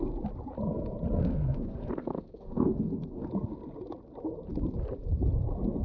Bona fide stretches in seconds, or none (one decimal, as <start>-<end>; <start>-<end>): 0.0-1.2; 3.3-5.8